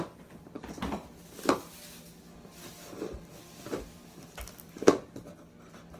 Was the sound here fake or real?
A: real